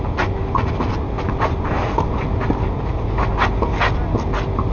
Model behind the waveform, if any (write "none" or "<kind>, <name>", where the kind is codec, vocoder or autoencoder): none